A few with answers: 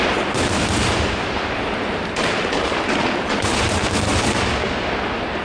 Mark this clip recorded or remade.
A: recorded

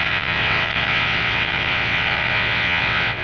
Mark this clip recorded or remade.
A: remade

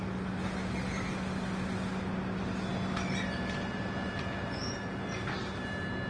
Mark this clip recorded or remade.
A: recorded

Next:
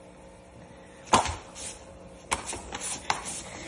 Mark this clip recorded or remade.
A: recorded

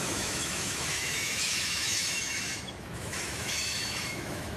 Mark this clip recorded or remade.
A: remade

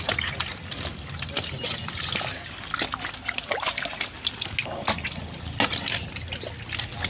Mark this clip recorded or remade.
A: recorded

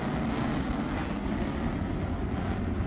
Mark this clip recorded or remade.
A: recorded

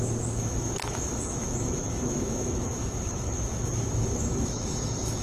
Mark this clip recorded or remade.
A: remade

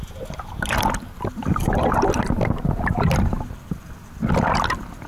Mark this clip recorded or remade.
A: recorded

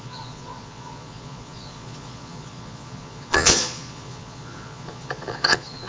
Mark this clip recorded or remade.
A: remade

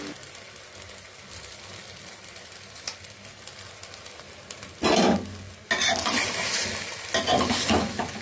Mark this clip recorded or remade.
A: recorded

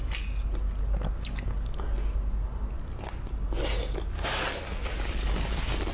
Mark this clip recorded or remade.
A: recorded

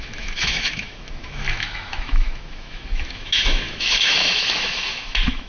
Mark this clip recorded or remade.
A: remade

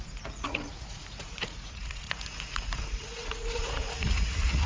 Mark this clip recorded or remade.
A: remade